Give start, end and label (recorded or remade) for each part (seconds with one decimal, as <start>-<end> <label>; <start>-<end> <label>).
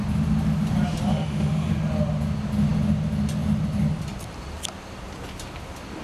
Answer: 0.0-1.1 recorded; 1.1-1.7 remade; 1.7-6.0 recorded